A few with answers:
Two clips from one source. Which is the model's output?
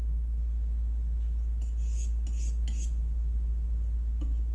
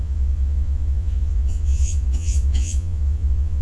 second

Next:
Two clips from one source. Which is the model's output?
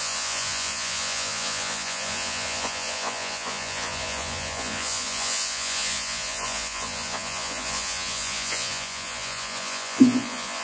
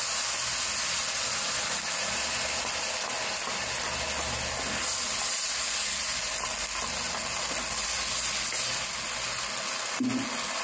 first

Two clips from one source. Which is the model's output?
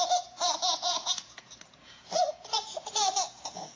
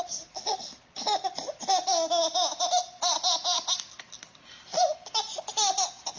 first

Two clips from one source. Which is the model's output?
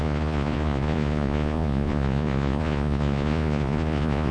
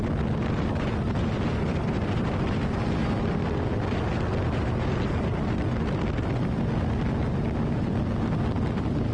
first